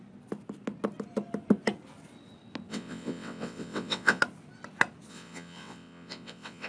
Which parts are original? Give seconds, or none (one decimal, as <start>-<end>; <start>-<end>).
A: 0.0-2.7; 4.2-5.1

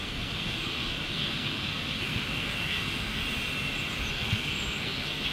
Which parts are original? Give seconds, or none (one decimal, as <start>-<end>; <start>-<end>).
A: 3.2-4.1

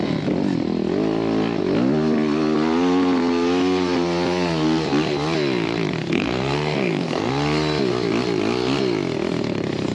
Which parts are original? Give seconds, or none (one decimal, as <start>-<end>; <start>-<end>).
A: 0.0-6.0; 7.3-9.9

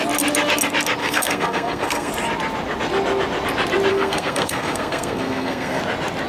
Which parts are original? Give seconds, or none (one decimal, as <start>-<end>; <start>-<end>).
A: 0.0-1.0; 2.1-3.9; 5.8-6.3

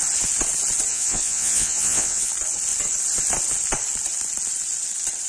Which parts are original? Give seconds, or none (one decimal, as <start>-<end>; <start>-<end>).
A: 0.0-0.9; 2.3-5.3

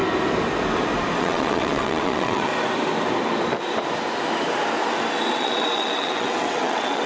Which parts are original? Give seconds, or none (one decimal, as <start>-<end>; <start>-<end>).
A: 0.0-1.2; 2.5-5.3

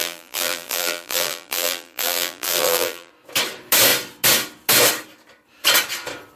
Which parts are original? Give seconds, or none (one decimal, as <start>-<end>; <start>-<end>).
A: 3.1-6.4